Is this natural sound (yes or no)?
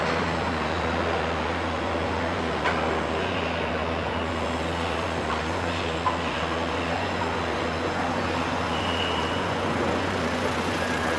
no